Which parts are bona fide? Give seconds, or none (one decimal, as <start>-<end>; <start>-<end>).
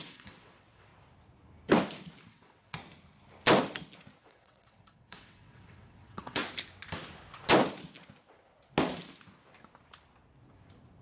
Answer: 0.9-2.3; 2.8-4.2; 6.4-11.0